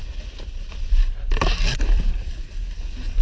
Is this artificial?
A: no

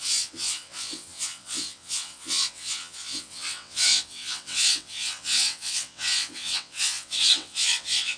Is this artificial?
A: yes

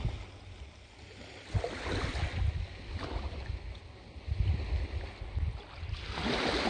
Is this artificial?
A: no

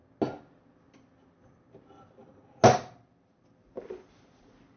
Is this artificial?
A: no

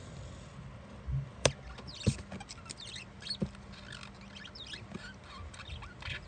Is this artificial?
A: no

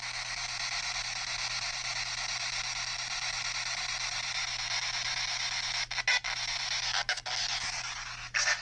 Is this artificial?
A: no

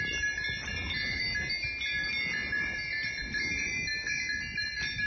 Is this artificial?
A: no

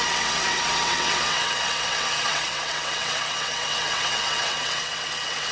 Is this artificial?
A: yes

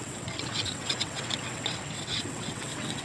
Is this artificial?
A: yes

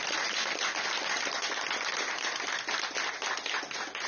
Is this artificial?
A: no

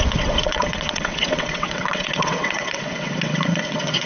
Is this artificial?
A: yes